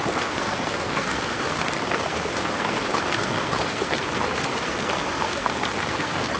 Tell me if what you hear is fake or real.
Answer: fake